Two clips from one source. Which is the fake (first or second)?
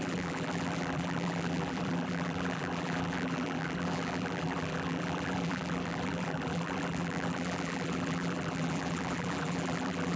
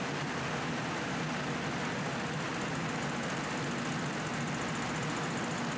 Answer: first